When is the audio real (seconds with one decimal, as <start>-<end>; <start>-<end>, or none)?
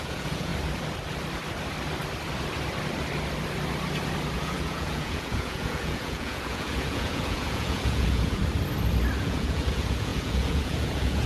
0.5-4.3; 8.4-9.2